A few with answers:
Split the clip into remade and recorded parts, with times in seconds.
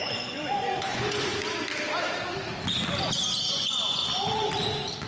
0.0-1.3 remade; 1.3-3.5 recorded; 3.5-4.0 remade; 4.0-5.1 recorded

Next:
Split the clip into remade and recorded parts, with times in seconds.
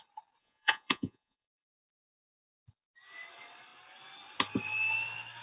0.0-0.4 recorded; 0.4-1.8 remade; 1.8-5.4 recorded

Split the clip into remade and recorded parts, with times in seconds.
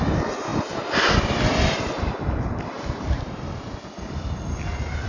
0.0-5.1 recorded